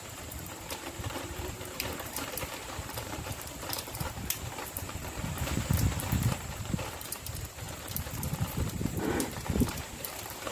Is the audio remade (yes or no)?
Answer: yes